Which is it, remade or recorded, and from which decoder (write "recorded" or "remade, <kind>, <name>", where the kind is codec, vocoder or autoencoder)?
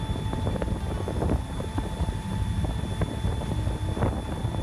recorded